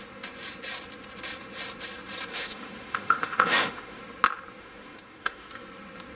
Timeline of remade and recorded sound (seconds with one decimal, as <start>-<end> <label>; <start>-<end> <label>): 0.0-2.3 recorded; 2.3-4.0 remade; 4.0-4.6 recorded; 4.6-5.5 remade; 5.5-6.1 recorded